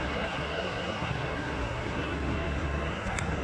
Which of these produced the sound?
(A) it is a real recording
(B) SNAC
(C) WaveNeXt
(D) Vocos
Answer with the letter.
B